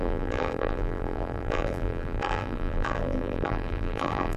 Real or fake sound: fake